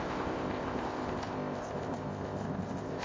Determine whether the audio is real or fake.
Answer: fake